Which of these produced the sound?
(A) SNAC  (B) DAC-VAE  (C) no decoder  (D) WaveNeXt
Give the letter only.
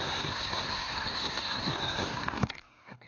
A